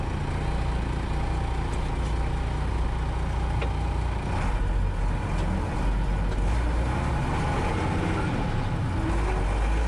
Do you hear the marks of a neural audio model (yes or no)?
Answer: no